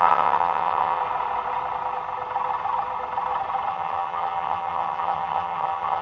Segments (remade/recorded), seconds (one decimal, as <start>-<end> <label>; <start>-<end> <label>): 0.0-1.0 remade; 1.0-3.7 recorded; 3.7-6.0 remade